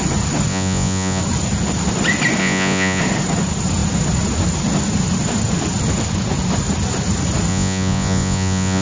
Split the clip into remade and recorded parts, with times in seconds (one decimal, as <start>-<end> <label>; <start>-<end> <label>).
0.0-0.5 recorded; 0.5-1.2 remade; 1.2-2.4 recorded; 2.4-3.0 remade; 3.0-7.5 recorded; 7.5-8.8 remade